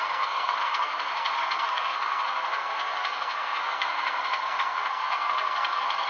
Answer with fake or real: fake